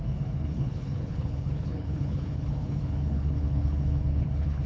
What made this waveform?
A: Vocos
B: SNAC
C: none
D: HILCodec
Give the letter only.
D